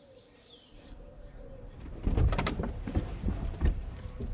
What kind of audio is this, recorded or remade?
remade